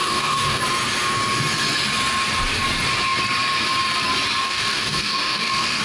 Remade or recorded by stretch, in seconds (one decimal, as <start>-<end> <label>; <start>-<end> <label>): 0.0-0.6 remade; 0.6-4.4 recorded; 4.4-5.8 remade